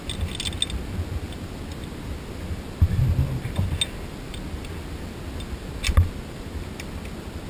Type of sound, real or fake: real